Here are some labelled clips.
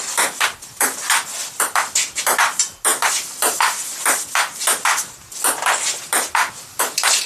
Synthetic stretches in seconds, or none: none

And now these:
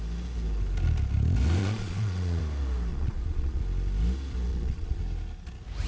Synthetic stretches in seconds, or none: 1.6-2.4; 2.9-3.6; 4.5-5.0

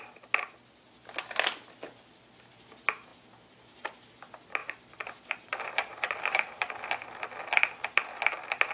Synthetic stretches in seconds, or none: 3.1-4.1; 4.6-6.7

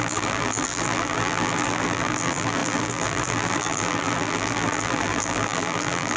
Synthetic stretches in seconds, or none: 0.0-6.2

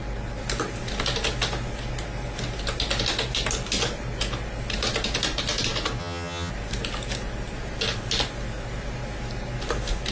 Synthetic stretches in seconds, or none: 6.0-6.5

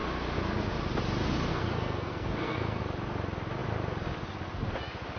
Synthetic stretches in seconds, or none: 1.5-2.8

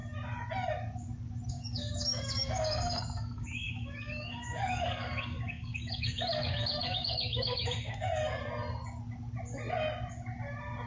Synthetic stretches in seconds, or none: 1.5-8.1